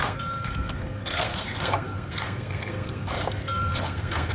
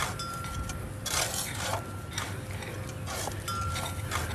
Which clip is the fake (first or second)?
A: first